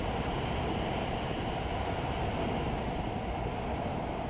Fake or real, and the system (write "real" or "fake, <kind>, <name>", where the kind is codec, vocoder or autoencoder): real